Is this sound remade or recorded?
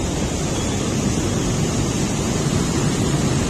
recorded